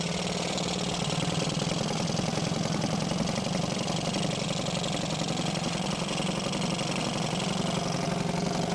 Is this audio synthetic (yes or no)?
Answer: no